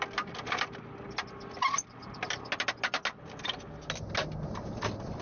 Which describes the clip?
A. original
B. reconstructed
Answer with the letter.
A